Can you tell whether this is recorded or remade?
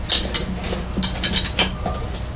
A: recorded